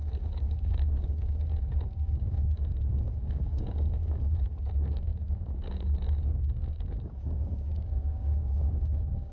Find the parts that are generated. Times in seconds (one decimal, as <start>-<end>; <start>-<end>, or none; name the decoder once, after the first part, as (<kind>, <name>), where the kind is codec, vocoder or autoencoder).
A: 0.0-9.3 (codec, DAC)